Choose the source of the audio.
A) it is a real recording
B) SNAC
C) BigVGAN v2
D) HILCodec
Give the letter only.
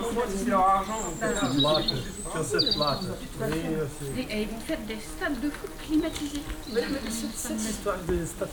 A